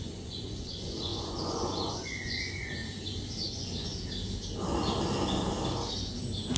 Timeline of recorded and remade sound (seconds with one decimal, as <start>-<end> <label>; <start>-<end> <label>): 0.0-2.8 remade; 2.8-3.5 recorded; 3.5-3.9 remade; 3.9-6.6 recorded